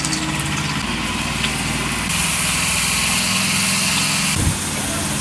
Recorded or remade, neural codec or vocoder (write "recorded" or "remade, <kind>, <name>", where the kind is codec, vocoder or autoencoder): recorded